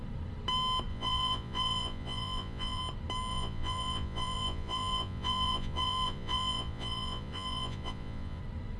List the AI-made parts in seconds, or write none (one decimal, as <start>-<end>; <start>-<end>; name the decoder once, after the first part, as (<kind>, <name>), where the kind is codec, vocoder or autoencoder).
0.9-2.8 (vocoder, Vocos); 3.3-8.4